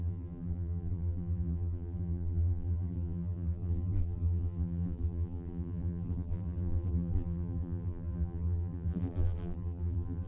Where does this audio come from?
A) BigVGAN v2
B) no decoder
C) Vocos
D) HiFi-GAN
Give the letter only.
A